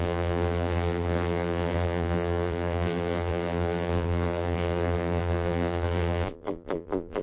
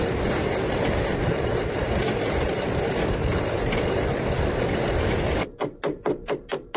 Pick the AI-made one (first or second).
first